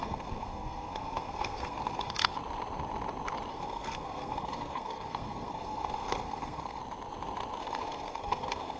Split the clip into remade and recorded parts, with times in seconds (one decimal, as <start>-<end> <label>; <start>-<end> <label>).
0.0-2.3 remade; 2.3-3.5 recorded; 3.5-6.8 remade; 6.8-7.6 recorded; 7.6-8.8 remade